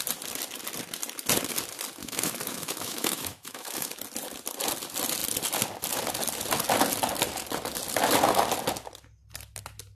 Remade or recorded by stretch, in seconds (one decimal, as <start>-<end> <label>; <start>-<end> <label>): 0.0-2.0 recorded; 2.0-3.9 remade; 3.9-9.9 recorded